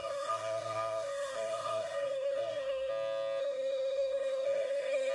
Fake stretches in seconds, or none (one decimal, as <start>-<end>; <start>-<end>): 0.0-2.9; 3.4-5.1